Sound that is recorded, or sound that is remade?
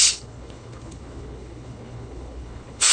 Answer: remade